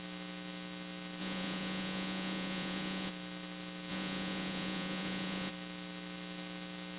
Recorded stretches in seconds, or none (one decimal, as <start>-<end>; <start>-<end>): 0.0-1.2; 3.1-3.9; 5.5-7.0